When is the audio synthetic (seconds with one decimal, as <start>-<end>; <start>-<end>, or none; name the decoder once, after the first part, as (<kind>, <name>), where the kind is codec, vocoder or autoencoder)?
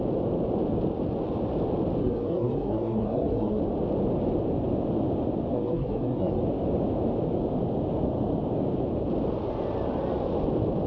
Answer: 2.0-3.6 (codec, SNAC); 5.5-6.4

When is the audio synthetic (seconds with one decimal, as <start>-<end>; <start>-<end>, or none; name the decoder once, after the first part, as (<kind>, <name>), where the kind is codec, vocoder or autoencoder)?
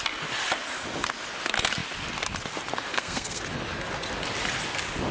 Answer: 2.9-3.4 (codec, SNAC)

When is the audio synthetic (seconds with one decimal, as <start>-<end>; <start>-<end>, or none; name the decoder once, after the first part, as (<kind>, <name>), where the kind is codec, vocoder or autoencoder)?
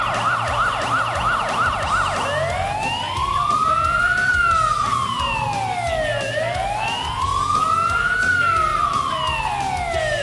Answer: none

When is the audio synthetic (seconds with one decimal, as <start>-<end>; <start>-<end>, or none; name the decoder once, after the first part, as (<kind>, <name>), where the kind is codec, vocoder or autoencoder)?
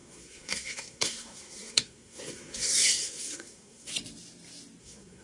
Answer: 0.0-3.9 (codec, SNAC); 4.8-5.2